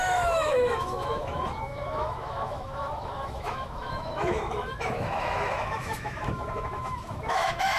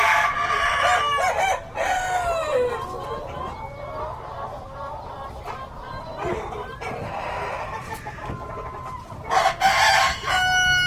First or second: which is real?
second